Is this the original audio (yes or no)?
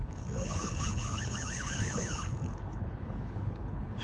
no